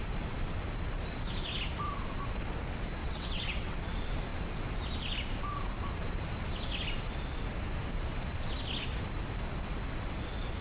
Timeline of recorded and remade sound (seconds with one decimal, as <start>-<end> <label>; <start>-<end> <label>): 0.0-3.0 recorded; 3.0-3.8 remade; 3.8-10.6 recorded